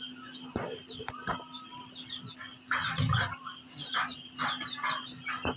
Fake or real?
real